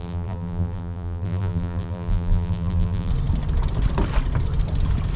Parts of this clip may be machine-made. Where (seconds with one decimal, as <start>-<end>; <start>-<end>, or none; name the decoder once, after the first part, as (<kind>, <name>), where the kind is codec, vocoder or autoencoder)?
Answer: 0.0-3.1 (vocoder, BigVGAN v2)